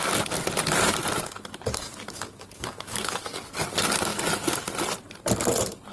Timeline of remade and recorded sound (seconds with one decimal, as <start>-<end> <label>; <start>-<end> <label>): 0.0-1.9 recorded; 1.9-3.2 remade; 3.2-5.9 recorded